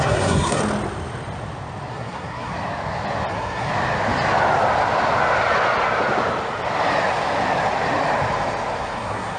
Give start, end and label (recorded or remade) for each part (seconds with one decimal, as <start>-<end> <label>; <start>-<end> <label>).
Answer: 0.0-0.6 remade; 0.6-1.9 recorded; 1.9-2.5 remade; 2.5-3.3 recorded; 3.3-3.7 remade; 3.7-8.8 recorded; 8.8-9.4 remade